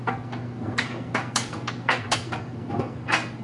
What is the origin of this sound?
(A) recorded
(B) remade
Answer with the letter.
B